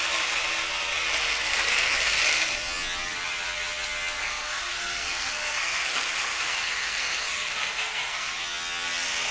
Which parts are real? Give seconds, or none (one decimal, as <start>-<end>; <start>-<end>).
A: 0.0-1.5; 2.2-4.2; 8.4-9.3